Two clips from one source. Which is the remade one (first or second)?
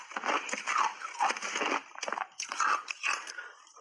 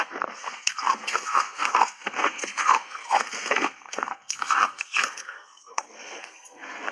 second